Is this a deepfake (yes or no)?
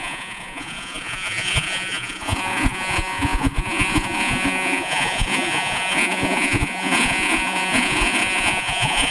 yes